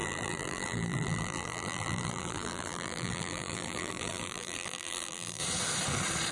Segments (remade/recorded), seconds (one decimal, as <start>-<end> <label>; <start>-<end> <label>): 0.0-5.4 remade; 5.4-6.3 recorded